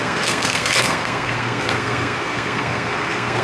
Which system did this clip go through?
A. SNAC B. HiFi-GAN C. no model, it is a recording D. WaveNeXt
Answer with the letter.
A